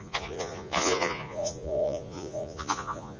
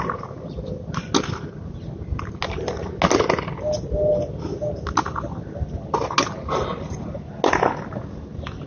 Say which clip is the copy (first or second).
first